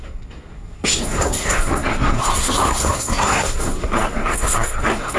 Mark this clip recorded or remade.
remade